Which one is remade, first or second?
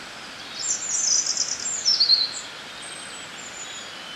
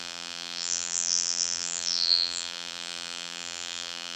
second